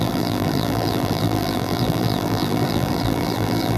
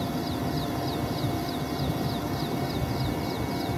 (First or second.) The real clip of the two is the second